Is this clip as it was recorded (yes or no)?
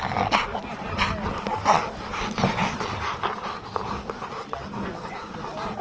yes